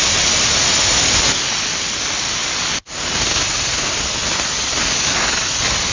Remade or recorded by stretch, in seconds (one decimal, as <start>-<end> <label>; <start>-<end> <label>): 0.0-5.9 recorded